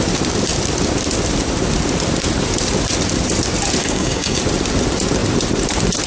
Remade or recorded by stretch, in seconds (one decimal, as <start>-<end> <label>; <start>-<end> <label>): 0.0-3.8 recorded; 3.8-4.4 remade; 4.4-6.1 recorded